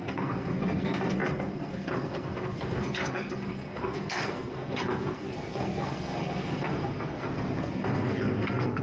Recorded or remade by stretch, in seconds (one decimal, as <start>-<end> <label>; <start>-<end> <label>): 0.0-8.8 remade